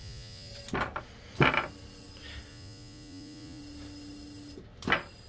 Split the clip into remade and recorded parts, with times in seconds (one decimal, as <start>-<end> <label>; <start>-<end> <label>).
0.0-0.5 remade; 0.5-2.5 recorded; 2.5-3.6 remade; 3.6-5.3 recorded